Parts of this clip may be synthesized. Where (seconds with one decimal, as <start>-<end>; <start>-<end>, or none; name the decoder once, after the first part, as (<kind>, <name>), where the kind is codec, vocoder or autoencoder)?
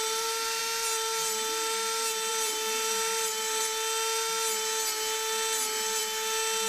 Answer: 0.0-0.6 (vocoder, BigVGAN v2); 2.3-3.6